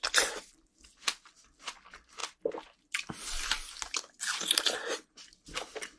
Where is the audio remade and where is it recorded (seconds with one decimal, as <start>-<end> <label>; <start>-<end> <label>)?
0.0-6.0 recorded